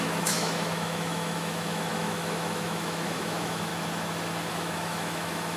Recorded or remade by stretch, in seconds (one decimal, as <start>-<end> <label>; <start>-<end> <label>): 0.0-3.7 remade; 3.7-4.5 recorded; 4.5-5.6 remade